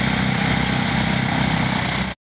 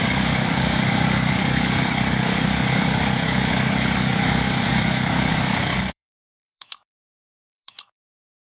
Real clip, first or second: first